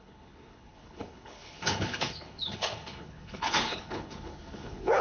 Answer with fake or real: fake